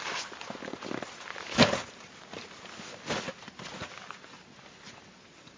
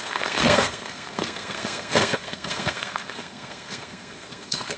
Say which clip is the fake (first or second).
second